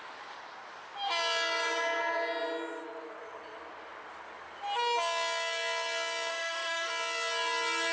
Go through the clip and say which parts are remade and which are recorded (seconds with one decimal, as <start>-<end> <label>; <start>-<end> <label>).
0.0-6.3 recorded; 6.3-6.9 remade; 6.9-7.9 recorded